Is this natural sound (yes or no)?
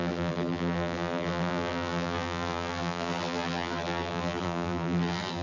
no